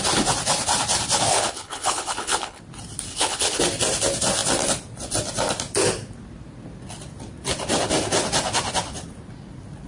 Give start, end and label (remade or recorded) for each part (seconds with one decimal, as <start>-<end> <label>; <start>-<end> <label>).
0.0-1.3 recorded; 1.3-2.6 remade; 2.6-3.1 recorded; 3.1-3.6 remade; 3.6-9.9 recorded